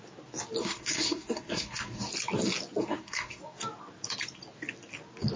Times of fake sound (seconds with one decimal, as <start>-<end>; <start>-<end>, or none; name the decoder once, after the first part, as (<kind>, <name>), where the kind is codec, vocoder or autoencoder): 0.6-2.1 (codec, SNAC); 2.8-3.4